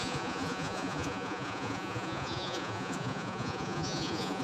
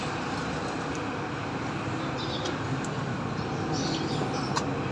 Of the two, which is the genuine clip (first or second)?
second